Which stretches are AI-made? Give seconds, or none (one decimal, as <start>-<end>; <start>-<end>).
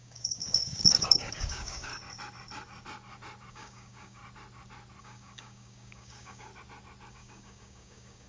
0.0-1.9; 3.5-4.2; 5.0-6.5; 7.1-8.3